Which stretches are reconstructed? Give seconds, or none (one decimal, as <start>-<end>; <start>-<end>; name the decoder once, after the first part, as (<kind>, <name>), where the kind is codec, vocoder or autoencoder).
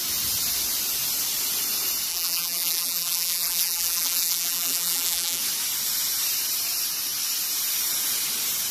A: 2.1-5.4 (vocoder, BigVGAN v2)